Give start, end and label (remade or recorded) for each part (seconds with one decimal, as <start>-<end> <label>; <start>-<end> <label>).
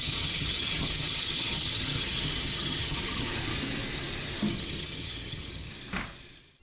0.0-3.3 remade; 3.3-4.5 recorded; 4.5-5.7 remade; 5.7-6.6 recorded